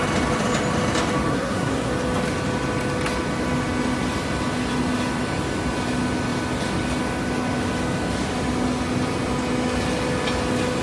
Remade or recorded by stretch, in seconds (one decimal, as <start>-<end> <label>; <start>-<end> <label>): 0.0-1.3 recorded; 1.3-1.9 remade; 1.9-10.8 recorded